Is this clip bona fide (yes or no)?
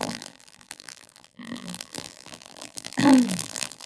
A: no